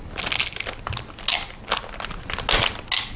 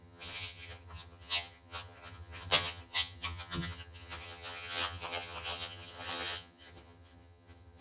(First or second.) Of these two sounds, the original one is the first